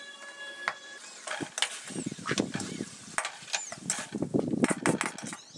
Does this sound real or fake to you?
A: real